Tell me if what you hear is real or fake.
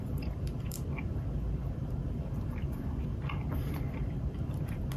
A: real